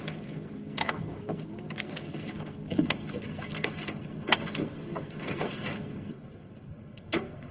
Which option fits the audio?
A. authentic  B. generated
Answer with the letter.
B